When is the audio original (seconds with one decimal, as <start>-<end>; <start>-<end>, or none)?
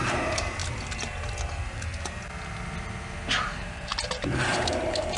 0.6-3.4